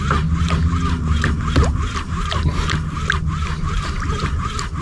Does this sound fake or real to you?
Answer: real